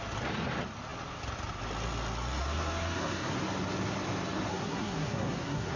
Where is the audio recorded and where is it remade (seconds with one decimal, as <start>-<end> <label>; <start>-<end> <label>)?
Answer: 0.0-2.4 recorded; 2.4-3.3 remade; 3.3-4.5 recorded; 4.5-5.8 remade